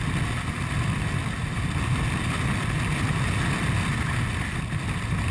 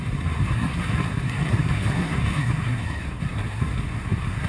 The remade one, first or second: second